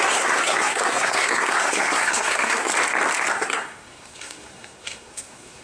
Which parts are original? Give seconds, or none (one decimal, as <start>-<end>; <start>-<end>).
2.7-3.3